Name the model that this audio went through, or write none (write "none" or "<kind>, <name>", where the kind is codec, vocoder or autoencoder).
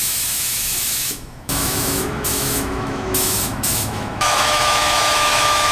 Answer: autoencoder, DAC-VAE